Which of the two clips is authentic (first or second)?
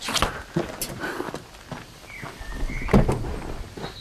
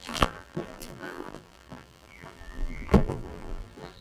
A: first